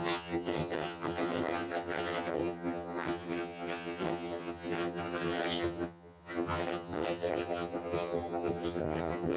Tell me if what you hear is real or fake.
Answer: fake